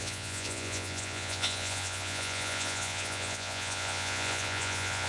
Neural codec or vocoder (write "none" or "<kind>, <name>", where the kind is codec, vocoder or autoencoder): vocoder, Vocos